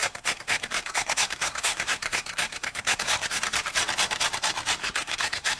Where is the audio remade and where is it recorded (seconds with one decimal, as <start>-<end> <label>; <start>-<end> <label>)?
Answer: 0.0-3.4 remade; 3.4-4.8 recorded; 4.8-5.6 remade